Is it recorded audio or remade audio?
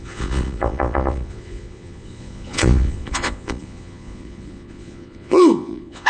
remade